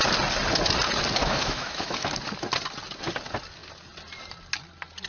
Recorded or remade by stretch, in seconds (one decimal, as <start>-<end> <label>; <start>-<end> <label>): 0.0-1.2 recorded; 1.2-2.1 remade; 2.1-5.1 recorded